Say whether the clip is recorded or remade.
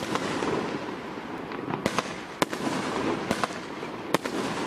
recorded